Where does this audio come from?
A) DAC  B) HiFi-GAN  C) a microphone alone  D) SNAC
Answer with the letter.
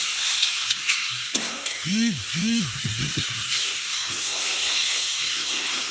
D